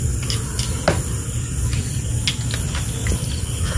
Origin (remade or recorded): recorded